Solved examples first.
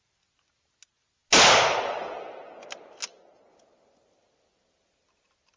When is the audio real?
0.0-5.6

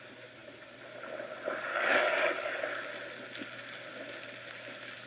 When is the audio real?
0.0-1.7; 2.6-5.1